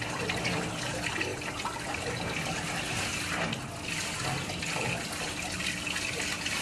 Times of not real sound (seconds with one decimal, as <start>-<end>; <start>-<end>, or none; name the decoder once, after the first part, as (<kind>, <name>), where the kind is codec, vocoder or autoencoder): none